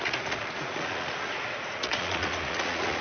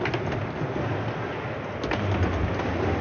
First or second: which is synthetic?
first